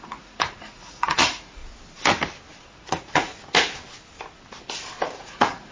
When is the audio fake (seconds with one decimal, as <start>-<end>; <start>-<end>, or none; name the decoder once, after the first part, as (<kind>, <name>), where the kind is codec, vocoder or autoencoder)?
0.0-1.6 (vocoder, Vocos); 2.6-3.3; 5.2-5.7